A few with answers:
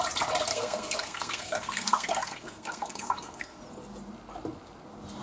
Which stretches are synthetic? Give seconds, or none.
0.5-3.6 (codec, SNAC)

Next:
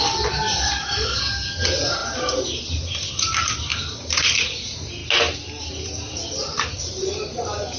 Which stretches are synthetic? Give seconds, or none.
0.0-5.0 (vocoder, BigVGAN v2); 5.7-7.8